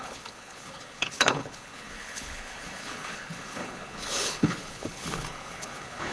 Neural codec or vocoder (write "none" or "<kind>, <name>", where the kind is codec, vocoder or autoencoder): codec, HILCodec